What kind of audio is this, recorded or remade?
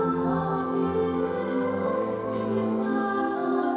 remade